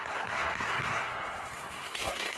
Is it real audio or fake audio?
fake